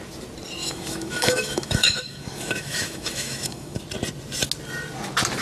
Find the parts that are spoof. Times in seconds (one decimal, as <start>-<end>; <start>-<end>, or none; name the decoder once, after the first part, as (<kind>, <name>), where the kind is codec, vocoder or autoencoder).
0.6-3.8 (autoencoder, DAC-VAE)